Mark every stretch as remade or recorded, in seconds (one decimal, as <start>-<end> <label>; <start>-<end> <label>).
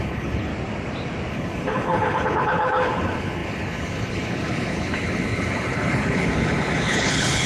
0.0-0.5 remade; 0.5-1.3 recorded; 1.3-7.5 remade